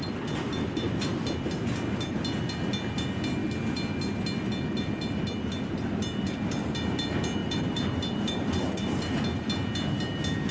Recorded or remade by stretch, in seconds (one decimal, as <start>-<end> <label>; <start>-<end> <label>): 0.0-7.4 recorded; 7.4-9.2 remade; 9.2-10.5 recorded